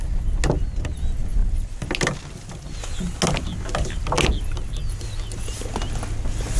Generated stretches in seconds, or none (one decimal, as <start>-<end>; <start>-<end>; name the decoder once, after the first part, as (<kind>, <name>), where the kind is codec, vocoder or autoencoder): none